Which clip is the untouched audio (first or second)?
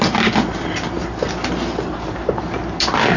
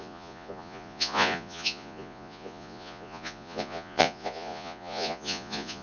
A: first